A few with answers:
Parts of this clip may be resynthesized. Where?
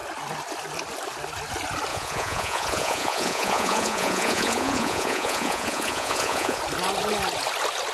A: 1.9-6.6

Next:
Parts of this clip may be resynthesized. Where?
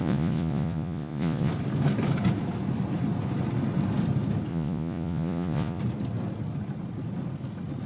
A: 0.0-1.5; 4.5-5.8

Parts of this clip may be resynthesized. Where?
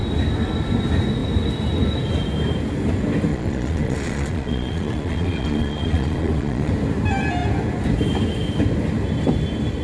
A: 3.3-6.7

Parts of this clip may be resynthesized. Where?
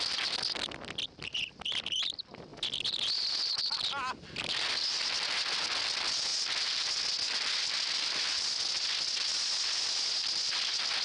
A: none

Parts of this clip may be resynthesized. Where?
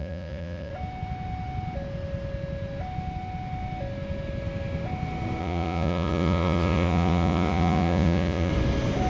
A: 0.0-0.7; 5.4-8.5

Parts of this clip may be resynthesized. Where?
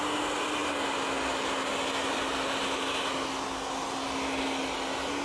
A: none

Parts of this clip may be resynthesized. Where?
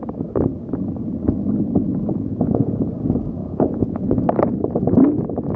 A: 2.1-2.9; 3.4-4.0